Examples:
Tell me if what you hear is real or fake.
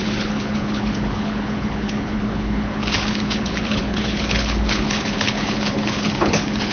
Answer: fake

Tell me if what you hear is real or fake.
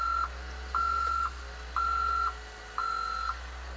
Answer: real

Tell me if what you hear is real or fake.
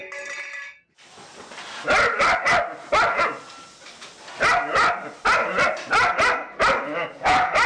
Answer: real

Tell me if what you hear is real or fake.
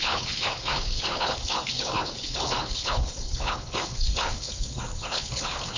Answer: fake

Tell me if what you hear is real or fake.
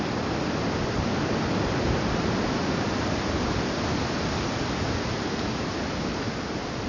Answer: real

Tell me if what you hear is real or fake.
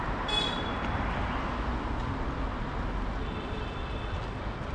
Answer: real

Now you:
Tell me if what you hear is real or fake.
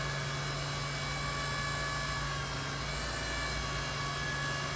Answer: real